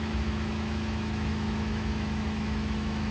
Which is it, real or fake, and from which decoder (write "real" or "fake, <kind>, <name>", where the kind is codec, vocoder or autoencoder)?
fake, autoencoder, DAC-VAE